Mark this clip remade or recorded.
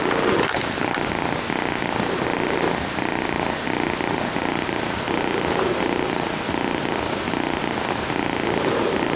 recorded